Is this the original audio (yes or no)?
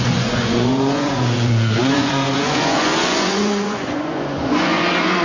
no